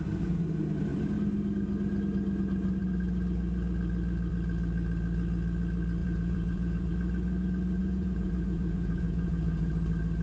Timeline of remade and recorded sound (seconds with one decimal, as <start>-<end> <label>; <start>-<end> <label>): 0.0-6.0 recorded; 6.0-6.9 remade; 6.9-7.8 recorded; 7.8-9.7 remade; 9.7-10.2 recorded

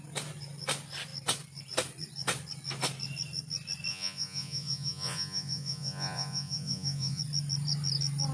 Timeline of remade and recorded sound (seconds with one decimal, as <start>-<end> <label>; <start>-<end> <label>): 0.0-3.9 recorded; 3.9-7.2 remade; 7.2-8.3 recorded

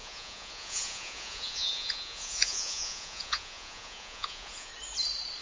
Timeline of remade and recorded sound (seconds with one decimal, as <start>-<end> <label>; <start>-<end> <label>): 0.0-4.7 remade; 4.7-5.4 recorded

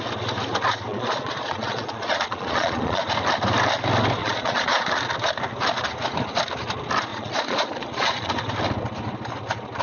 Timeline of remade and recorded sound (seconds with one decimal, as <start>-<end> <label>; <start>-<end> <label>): 0.0-0.9 recorded; 0.9-3.1 remade; 3.1-4.2 recorded; 4.2-4.9 remade; 4.9-7.1 recorded; 7.1-8.3 remade; 8.3-9.8 recorded

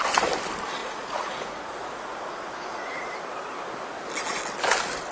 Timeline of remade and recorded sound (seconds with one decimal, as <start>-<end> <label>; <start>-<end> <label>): 0.0-0.8 recorded; 0.8-2.9 remade; 2.9-5.1 recorded